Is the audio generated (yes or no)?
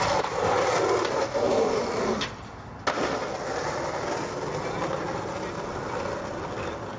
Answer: no